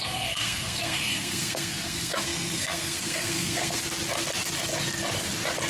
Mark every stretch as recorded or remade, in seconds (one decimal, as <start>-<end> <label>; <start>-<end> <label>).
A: 0.0-3.8 remade; 3.8-5.7 recorded